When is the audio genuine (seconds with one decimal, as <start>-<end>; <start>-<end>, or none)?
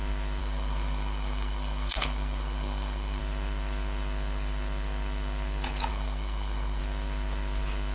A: 0.0-0.4; 3.2-5.9; 6.8-7.9